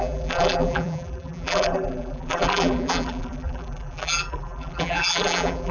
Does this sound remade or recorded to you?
remade